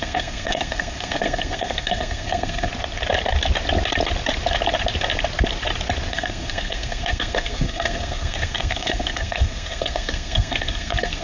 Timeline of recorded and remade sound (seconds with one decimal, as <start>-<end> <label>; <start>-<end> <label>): 0.0-2.7 remade; 2.7-6.1 recorded; 6.1-11.2 remade